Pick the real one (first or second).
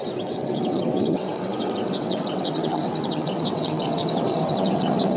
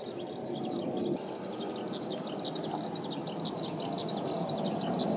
second